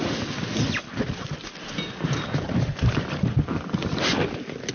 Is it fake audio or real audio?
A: real